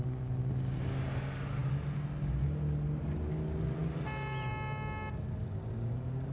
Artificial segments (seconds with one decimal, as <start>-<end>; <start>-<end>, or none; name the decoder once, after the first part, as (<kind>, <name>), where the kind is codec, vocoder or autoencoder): none